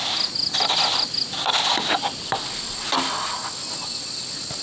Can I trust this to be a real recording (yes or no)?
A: yes